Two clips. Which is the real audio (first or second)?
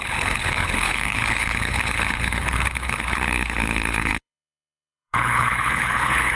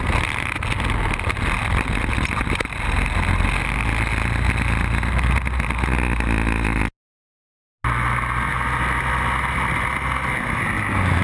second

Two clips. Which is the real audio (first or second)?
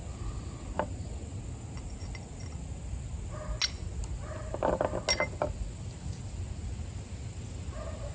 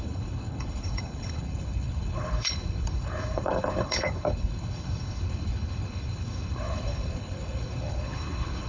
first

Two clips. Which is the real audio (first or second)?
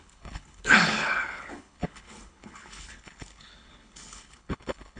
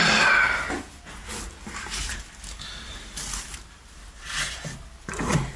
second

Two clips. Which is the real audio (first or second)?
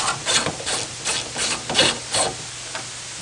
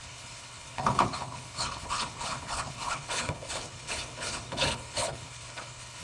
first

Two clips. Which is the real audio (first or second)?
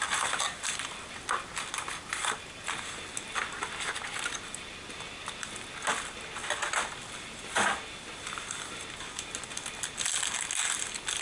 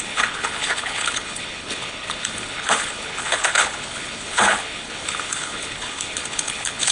first